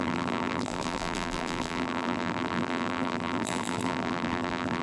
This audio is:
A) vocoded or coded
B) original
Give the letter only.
A